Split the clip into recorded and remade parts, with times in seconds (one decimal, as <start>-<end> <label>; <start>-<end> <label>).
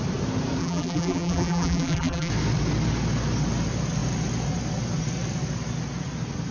0.0-0.6 recorded; 0.6-2.3 remade; 2.3-6.5 recorded